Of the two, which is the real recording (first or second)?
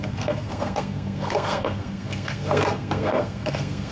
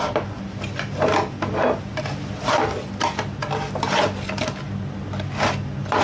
second